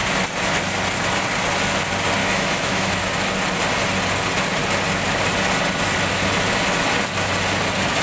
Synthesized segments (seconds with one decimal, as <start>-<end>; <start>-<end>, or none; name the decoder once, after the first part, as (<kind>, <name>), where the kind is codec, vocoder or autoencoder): 2.2-2.9 (autoencoder, DAC-VAE)